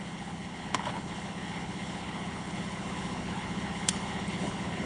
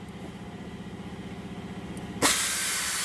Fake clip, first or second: first